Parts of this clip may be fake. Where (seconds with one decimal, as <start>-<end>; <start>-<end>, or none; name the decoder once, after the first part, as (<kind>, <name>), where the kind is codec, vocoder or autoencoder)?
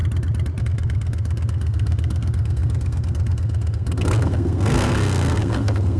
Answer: 0.6-6.0 (codec, SNAC)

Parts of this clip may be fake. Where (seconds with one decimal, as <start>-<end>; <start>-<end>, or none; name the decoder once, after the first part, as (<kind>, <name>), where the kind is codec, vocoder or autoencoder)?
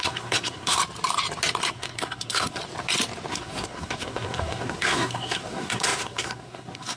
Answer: 0.0-0.8 (codec, SNAC); 1.7-2.6; 3.3-7.0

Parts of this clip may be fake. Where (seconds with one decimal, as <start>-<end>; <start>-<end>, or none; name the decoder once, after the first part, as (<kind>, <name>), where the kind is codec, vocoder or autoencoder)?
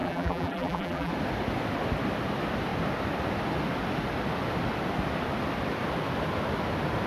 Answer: 0.0-1.1 (vocoder, BigVGAN v2)